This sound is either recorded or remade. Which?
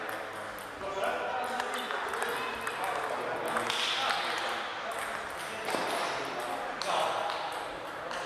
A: recorded